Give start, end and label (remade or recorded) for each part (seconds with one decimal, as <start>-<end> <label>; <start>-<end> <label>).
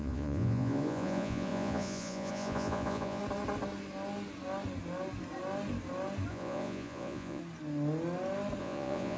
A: 0.0-3.2 remade; 3.2-6.3 recorded; 6.3-7.4 remade; 7.4-8.6 recorded; 8.6-9.2 remade